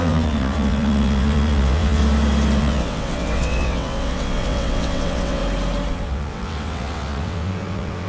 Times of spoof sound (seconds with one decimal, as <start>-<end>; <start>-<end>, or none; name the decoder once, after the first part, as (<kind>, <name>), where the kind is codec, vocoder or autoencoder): 0.0-2.0 (vocoder, WaveNeXt); 2.6-5.4; 5.9-8.1